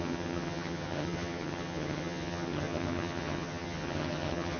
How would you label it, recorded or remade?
remade